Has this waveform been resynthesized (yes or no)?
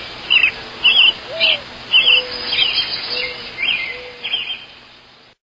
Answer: no